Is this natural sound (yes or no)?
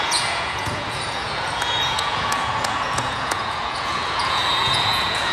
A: no